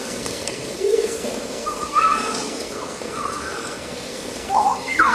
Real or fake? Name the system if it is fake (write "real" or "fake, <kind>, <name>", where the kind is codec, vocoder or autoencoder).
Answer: fake, codec, SNAC